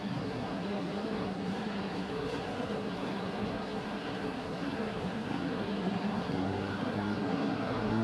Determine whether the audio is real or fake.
fake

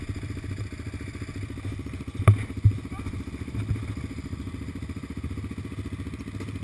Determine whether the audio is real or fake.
real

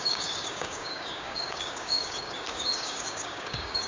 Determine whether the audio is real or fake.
fake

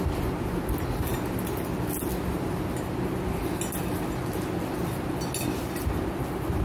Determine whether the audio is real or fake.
real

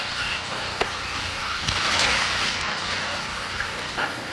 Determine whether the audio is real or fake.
fake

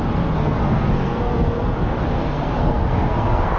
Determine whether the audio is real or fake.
fake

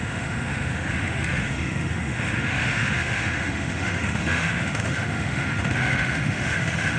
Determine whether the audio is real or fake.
fake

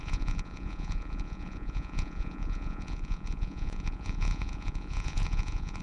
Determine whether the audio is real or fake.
fake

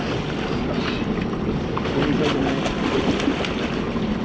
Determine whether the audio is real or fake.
real